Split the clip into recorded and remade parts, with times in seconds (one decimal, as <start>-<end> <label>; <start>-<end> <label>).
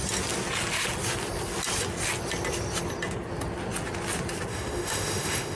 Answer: 0.0-4.5 recorded; 4.5-5.6 remade